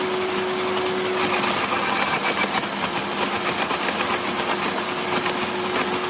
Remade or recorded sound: recorded